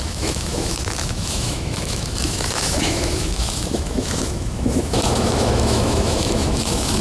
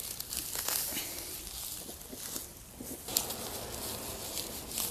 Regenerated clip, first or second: first